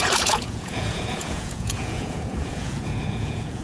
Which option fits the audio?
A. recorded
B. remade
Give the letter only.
B